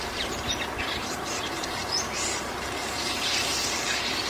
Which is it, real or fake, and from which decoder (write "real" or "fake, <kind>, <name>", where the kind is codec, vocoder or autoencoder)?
fake, vocoder, BigVGAN v2